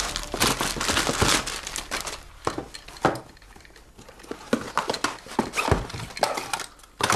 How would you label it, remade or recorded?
recorded